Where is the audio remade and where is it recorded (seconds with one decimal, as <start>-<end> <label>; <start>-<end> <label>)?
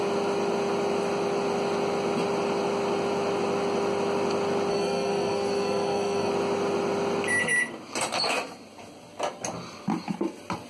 0.0-4.7 recorded; 4.7-6.3 remade; 6.3-10.7 recorded